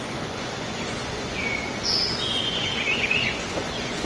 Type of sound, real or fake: fake